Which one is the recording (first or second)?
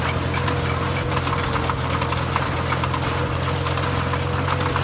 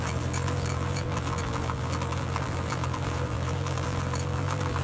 first